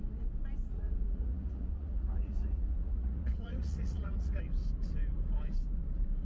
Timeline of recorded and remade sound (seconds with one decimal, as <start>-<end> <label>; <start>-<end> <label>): 0.0-0.7 recorded; 0.7-4.4 remade; 4.4-6.2 recorded